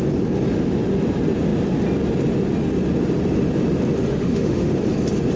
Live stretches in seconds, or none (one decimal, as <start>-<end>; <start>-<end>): 0.0-4.1; 4.7-5.4